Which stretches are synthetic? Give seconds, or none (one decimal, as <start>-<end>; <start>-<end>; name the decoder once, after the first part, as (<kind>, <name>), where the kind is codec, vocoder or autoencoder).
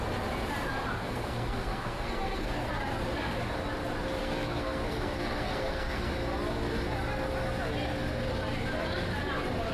1.0-2.7 (codec, SNAC); 4.2-6.1